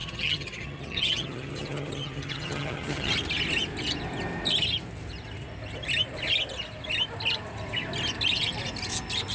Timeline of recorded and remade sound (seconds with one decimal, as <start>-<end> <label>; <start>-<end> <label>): 0.0-3.1 remade; 3.1-9.3 recorded